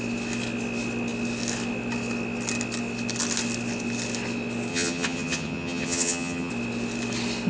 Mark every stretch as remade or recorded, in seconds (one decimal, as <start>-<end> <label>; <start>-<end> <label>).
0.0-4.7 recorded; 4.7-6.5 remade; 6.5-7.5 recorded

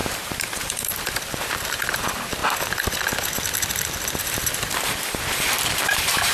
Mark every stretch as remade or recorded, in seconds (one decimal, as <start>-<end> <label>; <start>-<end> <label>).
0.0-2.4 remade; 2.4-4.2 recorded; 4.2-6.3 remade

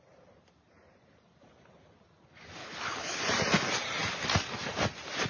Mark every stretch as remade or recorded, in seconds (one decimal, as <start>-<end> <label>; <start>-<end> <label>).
0.0-2.6 recorded; 2.6-3.2 remade; 3.2-5.3 recorded